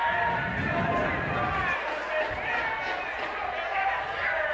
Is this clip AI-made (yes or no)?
no